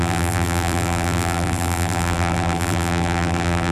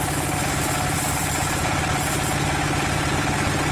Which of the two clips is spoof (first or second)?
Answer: first